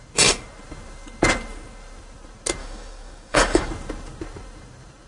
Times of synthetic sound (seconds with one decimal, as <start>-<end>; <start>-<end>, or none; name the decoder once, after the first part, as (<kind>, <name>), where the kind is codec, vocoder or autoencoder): 2.6-3.7 (codec, DAC)